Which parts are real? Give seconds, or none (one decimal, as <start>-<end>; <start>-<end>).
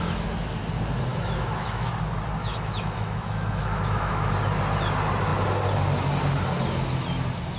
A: 0.0-1.1; 1.9-2.4; 4.3-7.6